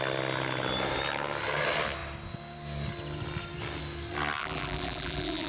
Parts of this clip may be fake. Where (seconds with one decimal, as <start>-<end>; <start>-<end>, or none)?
4.4-5.5